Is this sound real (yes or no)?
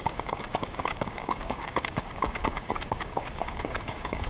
no